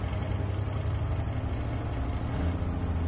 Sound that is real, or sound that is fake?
real